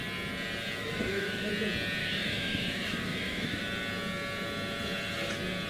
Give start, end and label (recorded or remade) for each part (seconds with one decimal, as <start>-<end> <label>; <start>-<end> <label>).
0.0-0.8 recorded; 0.8-1.5 remade; 1.5-2.0 recorded; 2.0-3.6 remade; 3.6-5.7 recorded